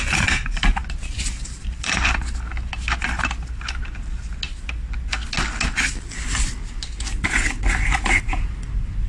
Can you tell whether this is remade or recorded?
recorded